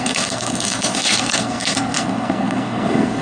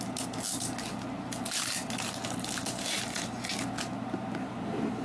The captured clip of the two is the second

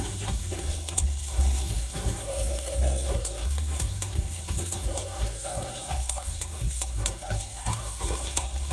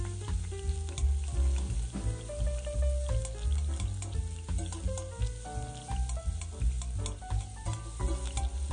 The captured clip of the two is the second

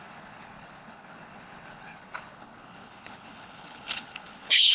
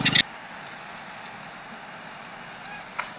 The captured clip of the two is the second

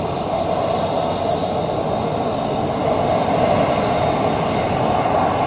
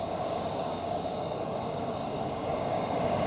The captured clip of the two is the first